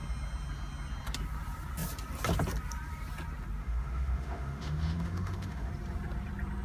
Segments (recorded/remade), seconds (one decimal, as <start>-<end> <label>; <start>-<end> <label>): 0.0-3.6 recorded; 3.6-5.7 remade; 5.7-6.6 recorded